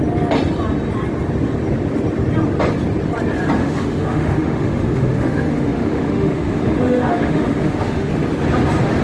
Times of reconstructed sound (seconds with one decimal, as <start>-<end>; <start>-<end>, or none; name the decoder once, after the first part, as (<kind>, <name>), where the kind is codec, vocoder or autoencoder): 3.6-8.1 (autoencoder, DAC-VAE)